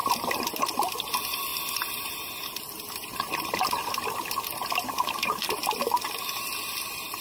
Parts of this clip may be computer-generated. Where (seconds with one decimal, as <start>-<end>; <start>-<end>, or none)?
none